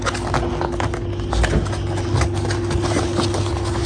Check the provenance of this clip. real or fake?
real